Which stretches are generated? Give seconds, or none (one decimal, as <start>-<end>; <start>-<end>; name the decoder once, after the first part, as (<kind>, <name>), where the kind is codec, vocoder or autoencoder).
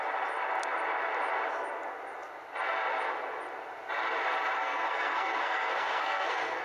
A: 4.6-6.6 (codec, SNAC)